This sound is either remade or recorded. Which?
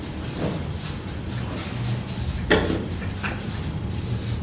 recorded